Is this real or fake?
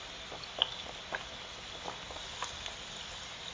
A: real